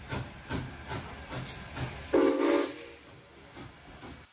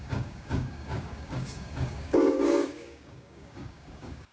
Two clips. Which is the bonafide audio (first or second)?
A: first